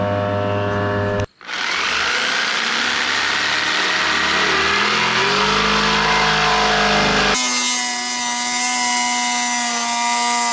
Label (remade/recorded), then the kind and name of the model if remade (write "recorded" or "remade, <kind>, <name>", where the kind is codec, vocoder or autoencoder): recorded